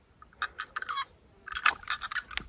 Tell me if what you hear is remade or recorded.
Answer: recorded